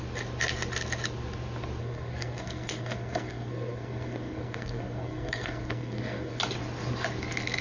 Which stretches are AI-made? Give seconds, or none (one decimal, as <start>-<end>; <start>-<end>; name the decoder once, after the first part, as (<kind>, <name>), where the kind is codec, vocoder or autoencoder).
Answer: 1.8-6.4 (codec, SNAC)